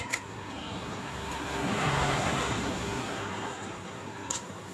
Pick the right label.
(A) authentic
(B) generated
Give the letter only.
B